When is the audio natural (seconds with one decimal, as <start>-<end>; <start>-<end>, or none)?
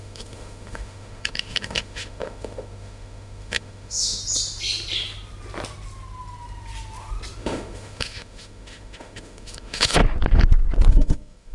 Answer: 4.2-7.4; 10.0-10.9